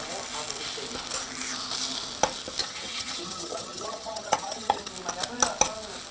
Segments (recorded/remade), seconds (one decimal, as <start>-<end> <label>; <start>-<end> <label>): 0.0-2.6 recorded; 2.6-4.9 remade; 4.9-6.1 recorded